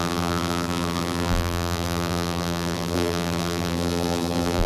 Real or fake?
fake